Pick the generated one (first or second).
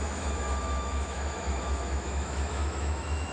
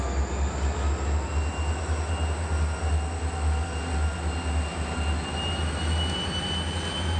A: first